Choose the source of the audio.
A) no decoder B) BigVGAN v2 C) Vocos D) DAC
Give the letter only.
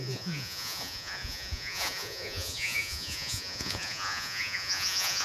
C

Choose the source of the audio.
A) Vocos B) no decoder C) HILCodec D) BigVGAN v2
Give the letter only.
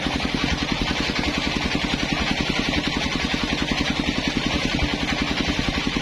B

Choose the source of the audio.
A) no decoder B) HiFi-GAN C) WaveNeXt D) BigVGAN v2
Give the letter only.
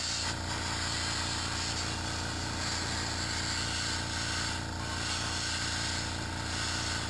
A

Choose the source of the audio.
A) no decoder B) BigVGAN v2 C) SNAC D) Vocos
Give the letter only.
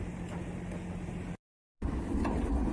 A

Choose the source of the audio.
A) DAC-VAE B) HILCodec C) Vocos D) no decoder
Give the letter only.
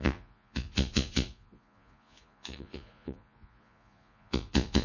C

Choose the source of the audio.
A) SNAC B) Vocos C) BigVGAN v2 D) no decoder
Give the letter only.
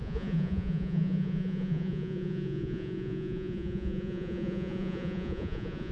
B